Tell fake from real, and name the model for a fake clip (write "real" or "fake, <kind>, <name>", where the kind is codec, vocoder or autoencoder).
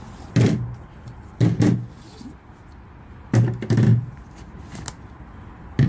real